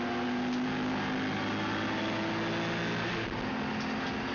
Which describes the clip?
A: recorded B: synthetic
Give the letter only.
A